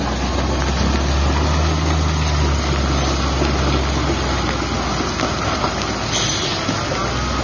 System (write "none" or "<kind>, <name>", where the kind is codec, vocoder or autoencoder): none